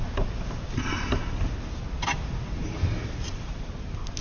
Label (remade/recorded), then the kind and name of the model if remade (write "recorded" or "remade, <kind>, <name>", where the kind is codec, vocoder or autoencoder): recorded